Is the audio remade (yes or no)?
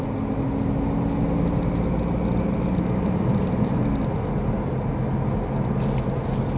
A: no